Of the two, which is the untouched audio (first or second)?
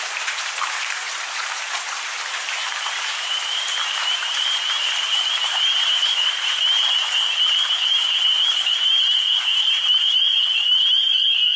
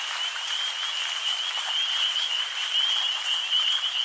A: second